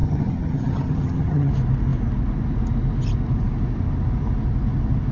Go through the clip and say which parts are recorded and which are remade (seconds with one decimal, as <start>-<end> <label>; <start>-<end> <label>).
0.0-1.5 remade; 1.5-5.1 recorded